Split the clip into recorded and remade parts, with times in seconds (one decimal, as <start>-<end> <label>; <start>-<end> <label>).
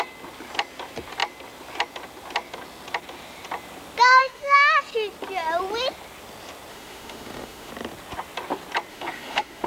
0.0-4.2 recorded; 4.2-4.8 remade; 4.8-6.7 recorded; 6.7-7.7 remade; 7.7-8.9 recorded; 8.9-9.7 remade